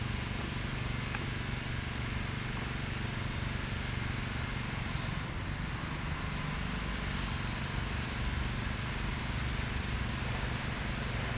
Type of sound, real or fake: real